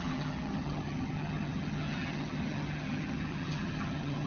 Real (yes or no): no